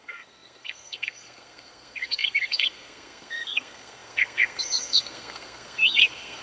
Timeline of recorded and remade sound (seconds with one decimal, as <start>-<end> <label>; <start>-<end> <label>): 0.0-6.4 remade